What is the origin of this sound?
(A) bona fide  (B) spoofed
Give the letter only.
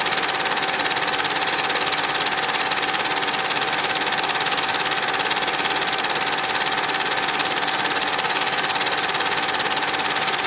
A